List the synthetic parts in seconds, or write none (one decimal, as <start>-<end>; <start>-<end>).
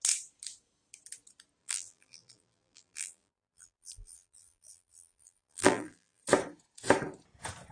1.6-6.2